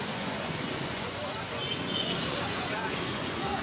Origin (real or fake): fake